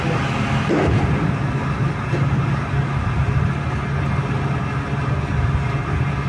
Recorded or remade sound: recorded